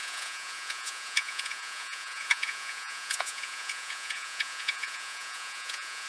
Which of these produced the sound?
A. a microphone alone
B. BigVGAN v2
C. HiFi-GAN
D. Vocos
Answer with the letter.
D